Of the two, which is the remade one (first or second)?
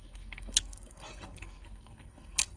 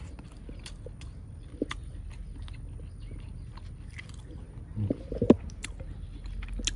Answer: first